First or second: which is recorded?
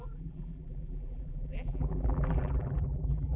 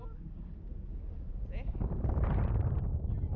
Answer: second